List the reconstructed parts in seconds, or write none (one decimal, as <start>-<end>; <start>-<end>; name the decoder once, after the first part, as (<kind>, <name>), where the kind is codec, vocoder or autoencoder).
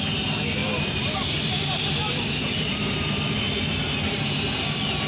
0.6-3.7 (vocoder, BigVGAN v2)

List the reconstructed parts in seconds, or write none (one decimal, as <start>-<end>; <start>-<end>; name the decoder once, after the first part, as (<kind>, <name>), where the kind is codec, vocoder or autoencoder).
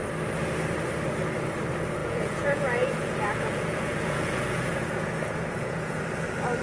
2.0-6.0 (vocoder, Vocos)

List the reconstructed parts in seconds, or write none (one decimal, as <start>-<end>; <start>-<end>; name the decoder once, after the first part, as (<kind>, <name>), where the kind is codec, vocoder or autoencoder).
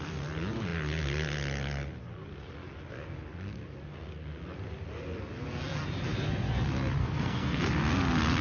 7.0-7.7 (codec, SNAC)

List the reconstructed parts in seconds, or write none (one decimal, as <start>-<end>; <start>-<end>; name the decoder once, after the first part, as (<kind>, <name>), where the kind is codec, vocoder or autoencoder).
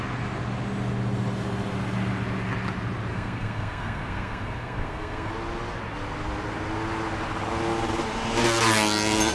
3.1-5.3 (codec, SNAC)